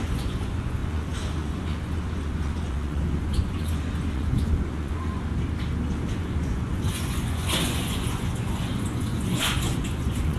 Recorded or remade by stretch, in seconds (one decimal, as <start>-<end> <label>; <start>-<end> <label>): 0.0-5.3 remade; 5.3-6.0 recorded; 6.0-10.4 remade